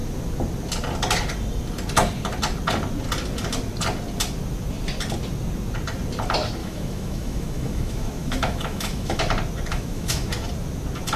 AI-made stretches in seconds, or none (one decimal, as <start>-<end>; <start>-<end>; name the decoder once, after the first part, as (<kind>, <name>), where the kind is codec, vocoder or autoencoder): 6.6-9.2 (autoencoder, DAC-VAE); 9.7-10.3